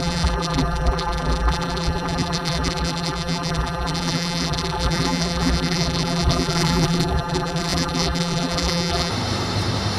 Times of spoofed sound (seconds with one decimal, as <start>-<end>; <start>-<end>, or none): 0.0-9.1